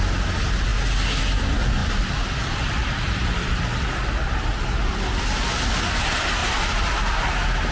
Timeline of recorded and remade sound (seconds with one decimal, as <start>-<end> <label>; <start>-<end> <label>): 0.0-1.8 recorded; 1.8-5.2 remade; 5.2-6.4 recorded; 6.4-7.3 remade; 7.3-7.7 recorded

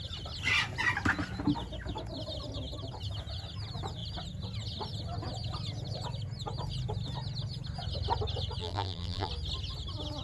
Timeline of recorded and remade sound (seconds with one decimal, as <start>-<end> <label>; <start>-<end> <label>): 0.0-8.6 recorded; 8.6-9.3 remade; 9.3-10.2 recorded

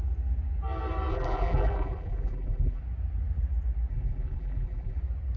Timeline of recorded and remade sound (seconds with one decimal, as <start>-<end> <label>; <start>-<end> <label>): 0.0-1.1 recorded; 1.1-2.8 remade; 2.8-3.9 recorded; 3.9-5.0 remade; 5.0-5.4 recorded

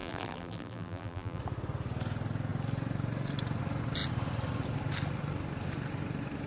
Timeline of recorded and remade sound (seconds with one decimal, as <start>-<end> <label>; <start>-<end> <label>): 0.0-1.4 remade; 1.4-6.5 recorded

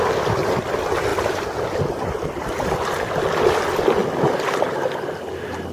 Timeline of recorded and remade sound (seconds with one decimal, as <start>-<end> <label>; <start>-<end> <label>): 0.0-1.1 recorded; 1.1-2.5 remade; 2.5-5.7 recorded

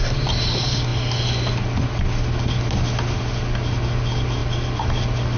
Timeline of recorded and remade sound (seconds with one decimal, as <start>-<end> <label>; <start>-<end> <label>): 0.0-4.4 recorded; 4.4-5.4 remade

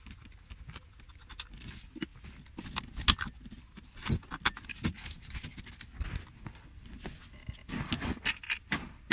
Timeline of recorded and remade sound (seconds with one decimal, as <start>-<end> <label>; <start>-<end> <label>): 0.0-9.1 recorded